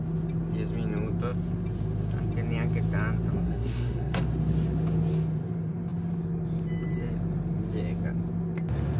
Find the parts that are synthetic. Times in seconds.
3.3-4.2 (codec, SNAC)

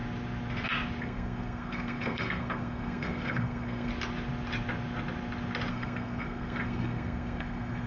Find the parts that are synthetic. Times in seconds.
1.0-3.9 (codec, SNAC); 5.7-7.9

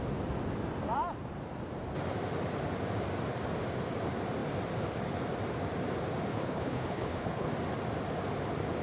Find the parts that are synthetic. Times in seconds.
6.3-7.5 (codec, HILCodec)

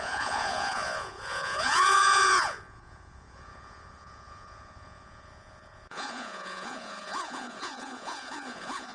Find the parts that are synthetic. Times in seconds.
0.0-8.9 (vocoder, Vocos)